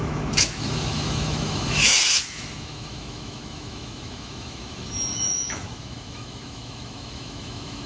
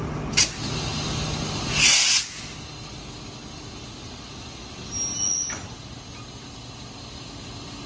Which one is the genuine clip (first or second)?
second